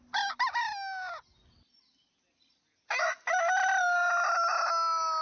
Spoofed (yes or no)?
no